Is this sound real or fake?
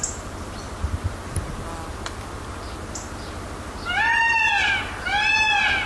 real